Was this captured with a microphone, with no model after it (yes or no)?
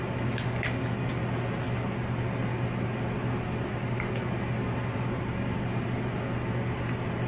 yes